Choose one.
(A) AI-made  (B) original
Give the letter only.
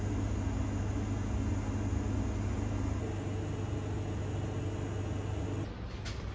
B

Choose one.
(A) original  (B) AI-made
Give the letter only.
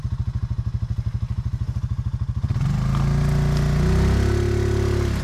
A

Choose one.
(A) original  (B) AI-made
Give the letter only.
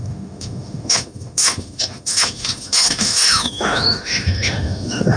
B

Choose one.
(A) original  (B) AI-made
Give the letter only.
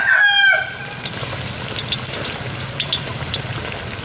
A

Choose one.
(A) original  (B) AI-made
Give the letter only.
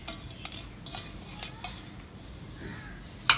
A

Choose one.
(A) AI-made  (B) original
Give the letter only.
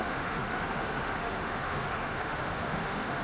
A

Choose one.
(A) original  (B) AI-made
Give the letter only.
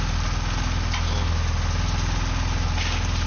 A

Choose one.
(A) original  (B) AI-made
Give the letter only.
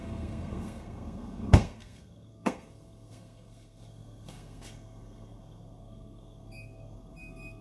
B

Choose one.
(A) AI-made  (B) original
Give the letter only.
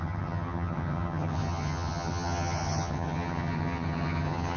A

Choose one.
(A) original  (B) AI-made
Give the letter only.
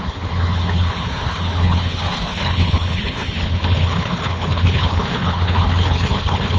B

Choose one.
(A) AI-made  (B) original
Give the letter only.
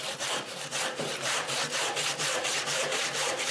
A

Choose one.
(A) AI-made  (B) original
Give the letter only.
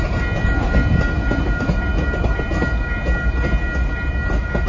B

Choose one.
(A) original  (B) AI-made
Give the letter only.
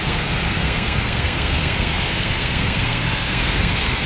B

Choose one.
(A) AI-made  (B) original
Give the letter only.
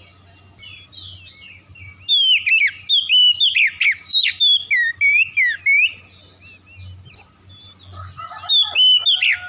B